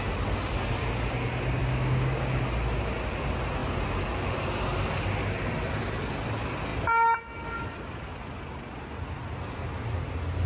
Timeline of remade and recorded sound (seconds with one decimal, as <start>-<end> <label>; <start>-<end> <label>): 0.0-1.6 recorded; 1.6-2.4 remade; 2.4-10.5 recorded